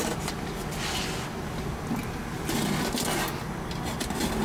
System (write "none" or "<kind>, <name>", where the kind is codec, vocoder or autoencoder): none